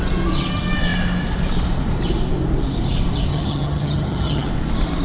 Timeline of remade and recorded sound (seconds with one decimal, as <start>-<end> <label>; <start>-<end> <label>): 0.0-3.3 recorded; 3.3-4.5 remade; 4.5-5.0 recorded